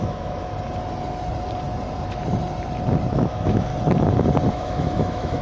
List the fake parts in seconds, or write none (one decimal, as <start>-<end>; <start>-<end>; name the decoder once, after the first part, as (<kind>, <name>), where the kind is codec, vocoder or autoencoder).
0.0-0.5 (autoencoder, DAC-VAE); 3.1-3.7; 4.5-5.4